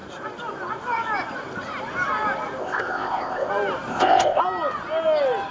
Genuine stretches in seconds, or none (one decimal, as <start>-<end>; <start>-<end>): 0.0-2.6; 3.5-3.9; 4.4-5.5